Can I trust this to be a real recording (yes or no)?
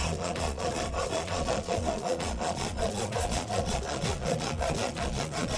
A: no